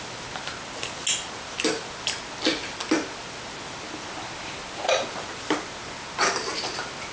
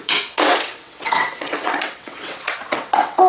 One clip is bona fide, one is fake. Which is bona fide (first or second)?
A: first